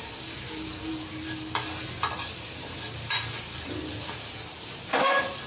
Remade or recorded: recorded